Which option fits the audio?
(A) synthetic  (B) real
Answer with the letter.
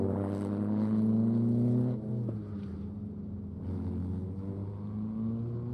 B